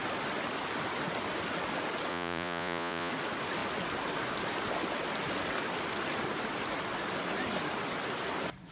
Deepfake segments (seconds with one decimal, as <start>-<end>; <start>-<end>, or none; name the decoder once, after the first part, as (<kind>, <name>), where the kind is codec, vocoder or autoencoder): 2.1-3.1 (vocoder, Vocos)